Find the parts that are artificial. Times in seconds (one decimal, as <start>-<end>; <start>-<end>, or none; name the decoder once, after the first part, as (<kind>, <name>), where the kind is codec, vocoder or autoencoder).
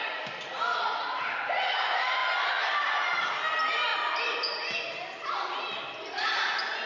none